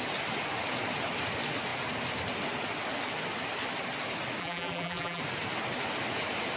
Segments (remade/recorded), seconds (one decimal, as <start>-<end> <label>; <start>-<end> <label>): 0.0-4.4 recorded; 4.4-5.2 remade; 5.2-6.6 recorded